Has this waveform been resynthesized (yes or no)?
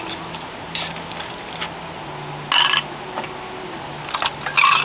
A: no